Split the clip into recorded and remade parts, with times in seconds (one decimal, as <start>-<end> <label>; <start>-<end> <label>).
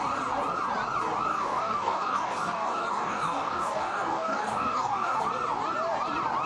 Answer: 0.0-1.3 recorded; 1.3-5.2 remade; 5.2-6.5 recorded